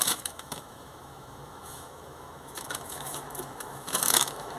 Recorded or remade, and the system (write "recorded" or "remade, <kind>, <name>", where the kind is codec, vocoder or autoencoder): remade, autoencoder, DAC-VAE